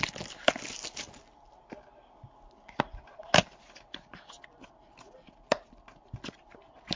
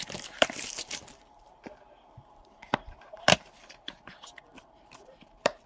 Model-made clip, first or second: second